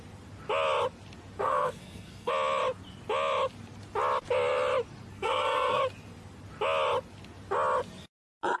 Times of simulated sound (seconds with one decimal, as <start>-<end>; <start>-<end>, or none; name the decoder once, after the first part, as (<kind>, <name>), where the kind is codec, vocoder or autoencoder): 1.4-2.3 (codec, SNAC); 5.1-5.8